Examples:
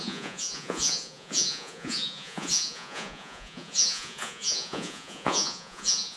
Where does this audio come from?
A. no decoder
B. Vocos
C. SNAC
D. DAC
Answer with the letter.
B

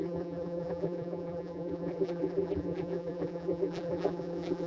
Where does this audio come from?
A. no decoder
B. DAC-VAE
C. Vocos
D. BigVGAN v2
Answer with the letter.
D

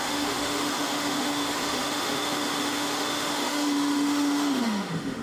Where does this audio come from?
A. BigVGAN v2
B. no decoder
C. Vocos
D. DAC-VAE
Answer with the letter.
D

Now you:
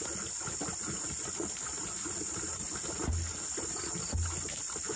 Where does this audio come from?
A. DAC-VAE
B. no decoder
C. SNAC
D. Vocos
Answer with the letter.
B